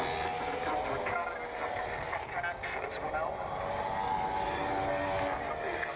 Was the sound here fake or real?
real